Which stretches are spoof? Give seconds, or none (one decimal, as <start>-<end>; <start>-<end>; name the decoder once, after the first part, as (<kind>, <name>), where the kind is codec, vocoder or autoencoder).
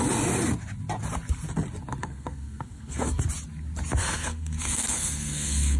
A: 2.0-3.2 (codec, SNAC); 4.0-5.8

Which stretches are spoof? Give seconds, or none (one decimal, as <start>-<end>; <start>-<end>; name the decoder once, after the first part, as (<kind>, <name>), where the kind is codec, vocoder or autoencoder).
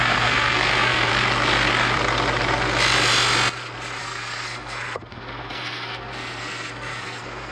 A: 0.0-1.1 (codec, SNAC); 4.0-7.5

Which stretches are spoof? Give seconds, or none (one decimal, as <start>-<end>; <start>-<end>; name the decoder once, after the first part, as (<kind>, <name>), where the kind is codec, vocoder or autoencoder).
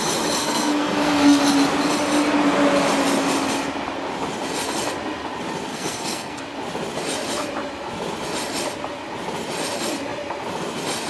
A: 0.4-1.4 (codec, SNAC); 5.7-6.4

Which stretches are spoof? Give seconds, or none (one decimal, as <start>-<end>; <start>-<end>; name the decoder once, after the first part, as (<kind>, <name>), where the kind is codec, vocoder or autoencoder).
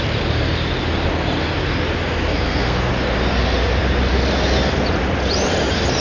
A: 2.3-2.9 (codec, SNAC)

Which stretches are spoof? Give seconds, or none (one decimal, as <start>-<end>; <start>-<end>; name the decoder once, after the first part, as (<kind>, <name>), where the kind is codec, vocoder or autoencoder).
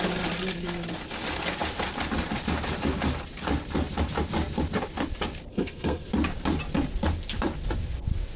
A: 5.5-6.1 (codec, SNAC)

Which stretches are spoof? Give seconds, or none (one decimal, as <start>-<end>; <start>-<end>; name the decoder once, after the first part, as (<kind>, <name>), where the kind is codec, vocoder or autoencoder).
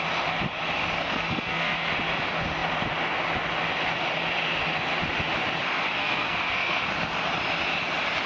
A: 1.0-1.9 (codec, SNAC); 6.0-6.9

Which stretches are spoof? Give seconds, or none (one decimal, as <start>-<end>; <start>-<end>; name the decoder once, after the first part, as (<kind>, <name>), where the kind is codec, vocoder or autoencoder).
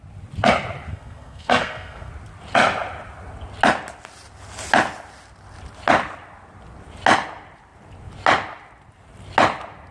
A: 0.9-2.1 (codec, SNAC)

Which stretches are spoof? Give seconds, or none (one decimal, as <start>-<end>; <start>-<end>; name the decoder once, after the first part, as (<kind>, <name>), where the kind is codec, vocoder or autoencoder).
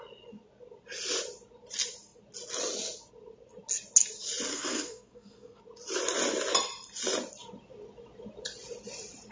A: 4.5-5.6 (codec, SNAC)